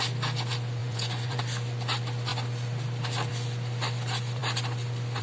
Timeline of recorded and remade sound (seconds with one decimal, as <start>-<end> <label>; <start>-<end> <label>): 0.0-0.8 recorded; 0.8-1.4 remade; 1.4-5.2 recorded